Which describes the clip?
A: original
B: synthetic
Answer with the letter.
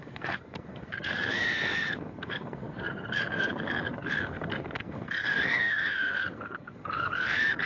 B